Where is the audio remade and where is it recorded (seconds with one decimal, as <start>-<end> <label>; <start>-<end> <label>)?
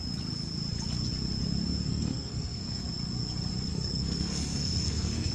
0.0-1.9 recorded; 1.9-2.8 remade; 2.8-3.7 recorded; 3.7-5.3 remade